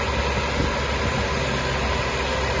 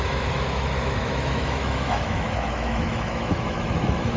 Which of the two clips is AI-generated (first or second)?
second